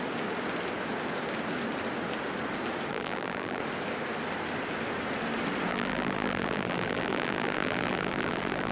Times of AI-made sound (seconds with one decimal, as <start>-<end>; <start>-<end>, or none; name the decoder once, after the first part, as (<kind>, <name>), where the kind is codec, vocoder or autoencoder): 2.9-3.6 (vocoder, BigVGAN v2); 5.7-8.7